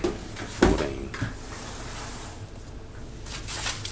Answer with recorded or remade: recorded